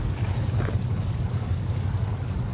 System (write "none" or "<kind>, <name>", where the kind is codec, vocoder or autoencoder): codec, DAC